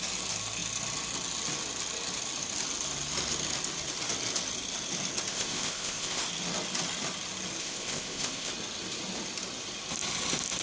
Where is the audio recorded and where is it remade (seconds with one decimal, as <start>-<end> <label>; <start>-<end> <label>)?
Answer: 0.0-5.3 recorded; 5.3-6.2 remade; 6.2-7.6 recorded; 7.6-8.5 remade; 8.5-10.6 recorded